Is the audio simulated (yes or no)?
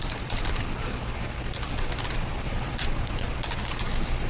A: no